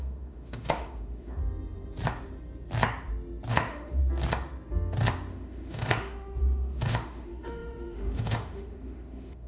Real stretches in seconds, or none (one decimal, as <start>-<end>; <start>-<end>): 1.4-3.5; 4.0-5.3